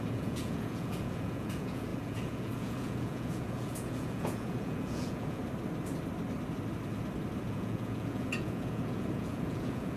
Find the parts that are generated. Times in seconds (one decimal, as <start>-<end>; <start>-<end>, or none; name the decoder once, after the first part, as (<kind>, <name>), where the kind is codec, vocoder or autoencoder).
0.0-5.4 (vocoder, Vocos); 7.4-10.0